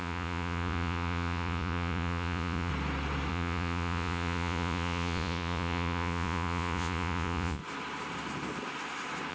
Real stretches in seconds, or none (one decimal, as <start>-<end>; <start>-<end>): 2.7-3.3; 7.6-9.3